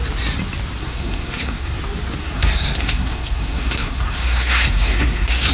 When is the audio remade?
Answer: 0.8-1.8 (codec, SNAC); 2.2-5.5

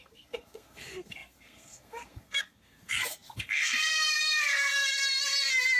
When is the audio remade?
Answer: 0.0-4.9 (codec, SNAC)

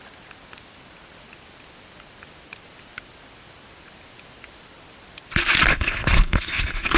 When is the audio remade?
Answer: 5.7-7.0 (codec, SNAC)

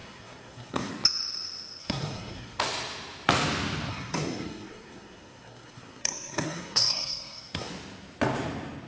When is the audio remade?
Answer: 0.0-0.9 (codec, SNAC); 1.8-2.6; 3.9-7.7

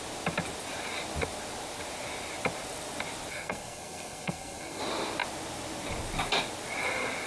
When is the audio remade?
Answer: 3.3-4.8 (codec, SNAC)

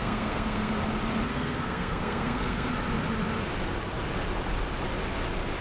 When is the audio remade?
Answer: 0.0-0.7 (codec, SNAC); 1.3-2.7

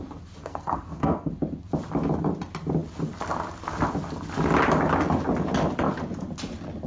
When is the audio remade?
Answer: 0.4-1.3 (codec, SNAC)